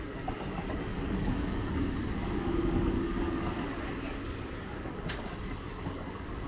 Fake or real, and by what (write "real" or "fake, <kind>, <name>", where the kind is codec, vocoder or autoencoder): fake, codec, DAC